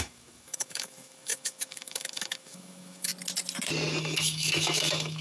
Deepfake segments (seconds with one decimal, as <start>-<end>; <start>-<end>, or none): 0.0-3.1; 4.0-5.2